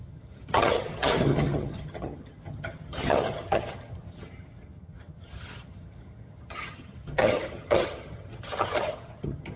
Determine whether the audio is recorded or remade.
remade